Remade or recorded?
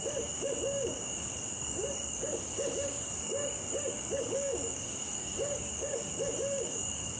remade